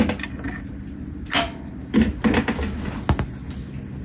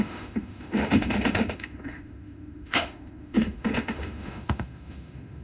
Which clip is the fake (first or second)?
second